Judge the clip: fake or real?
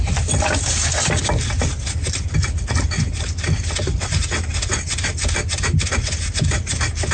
real